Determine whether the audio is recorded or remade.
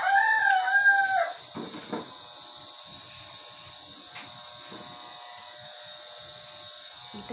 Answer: recorded